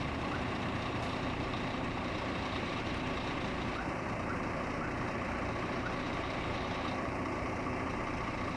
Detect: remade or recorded remade